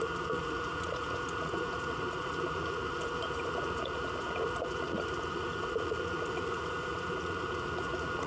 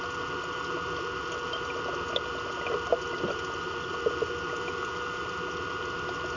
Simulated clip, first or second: first